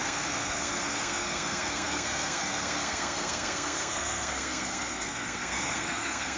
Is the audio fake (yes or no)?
yes